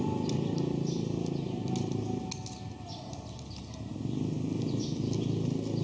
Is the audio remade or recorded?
recorded